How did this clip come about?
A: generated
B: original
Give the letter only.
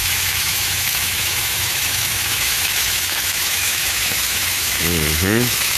A